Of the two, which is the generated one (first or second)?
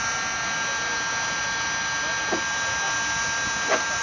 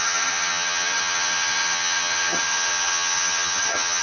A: second